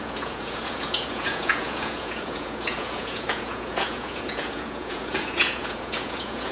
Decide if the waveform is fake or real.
fake